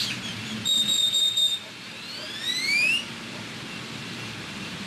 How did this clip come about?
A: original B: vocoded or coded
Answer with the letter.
B